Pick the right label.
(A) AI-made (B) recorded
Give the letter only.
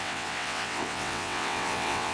A